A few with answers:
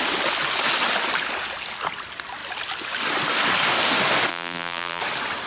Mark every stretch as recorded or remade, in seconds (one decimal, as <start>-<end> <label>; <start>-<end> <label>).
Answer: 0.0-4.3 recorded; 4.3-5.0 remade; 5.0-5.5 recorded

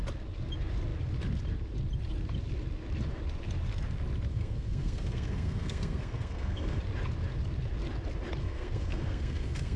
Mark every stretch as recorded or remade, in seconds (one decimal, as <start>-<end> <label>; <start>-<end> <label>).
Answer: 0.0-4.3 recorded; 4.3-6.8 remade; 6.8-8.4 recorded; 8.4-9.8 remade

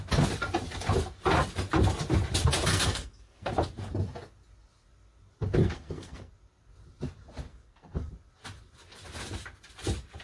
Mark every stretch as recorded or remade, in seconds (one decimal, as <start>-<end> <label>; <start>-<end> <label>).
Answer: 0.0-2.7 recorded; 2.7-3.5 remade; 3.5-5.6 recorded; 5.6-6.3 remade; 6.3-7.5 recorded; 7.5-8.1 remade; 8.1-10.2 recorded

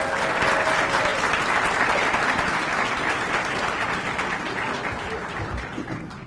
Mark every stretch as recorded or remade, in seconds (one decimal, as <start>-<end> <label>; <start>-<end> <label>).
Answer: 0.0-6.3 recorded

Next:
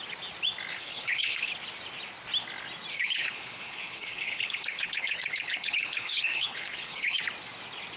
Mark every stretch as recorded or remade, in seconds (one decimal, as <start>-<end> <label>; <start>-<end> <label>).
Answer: 0.0-0.7 recorded; 0.7-1.5 remade; 1.5-2.9 recorded; 2.9-7.2 remade; 7.2-8.0 recorded